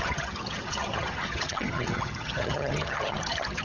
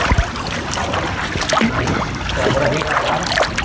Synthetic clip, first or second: first